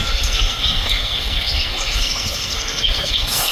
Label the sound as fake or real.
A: fake